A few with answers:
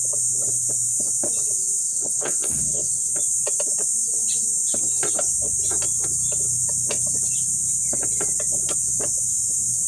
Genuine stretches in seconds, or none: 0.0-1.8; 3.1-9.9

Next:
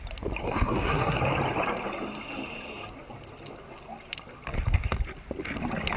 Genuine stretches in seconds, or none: 0.0-0.4; 1.2-6.0

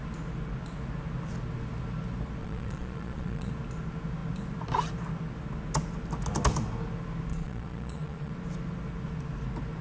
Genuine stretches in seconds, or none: 0.0-2.4; 3.5-7.3; 8.3-9.8

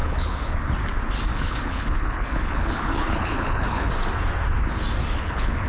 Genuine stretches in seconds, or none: 0.6-1.3; 3.9-5.0

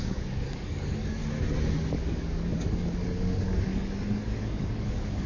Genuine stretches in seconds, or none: 1.2-1.7